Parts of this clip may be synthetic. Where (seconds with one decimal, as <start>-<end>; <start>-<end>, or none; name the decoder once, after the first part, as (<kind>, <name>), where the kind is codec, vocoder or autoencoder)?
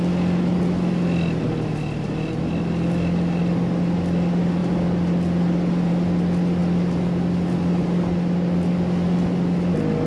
none